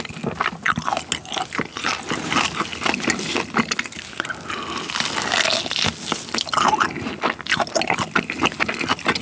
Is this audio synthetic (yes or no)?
no